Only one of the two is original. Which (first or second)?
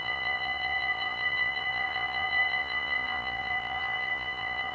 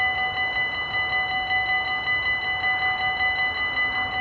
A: second